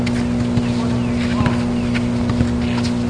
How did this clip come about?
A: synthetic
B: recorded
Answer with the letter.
B